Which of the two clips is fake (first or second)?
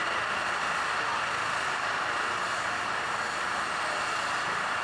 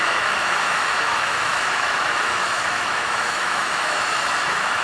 second